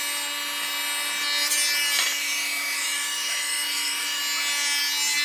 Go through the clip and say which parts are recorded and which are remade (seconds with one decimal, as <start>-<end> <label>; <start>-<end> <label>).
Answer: 0.0-2.1 recorded; 2.1-4.2 remade; 4.2-5.2 recorded